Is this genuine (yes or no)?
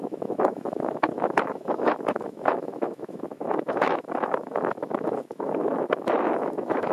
no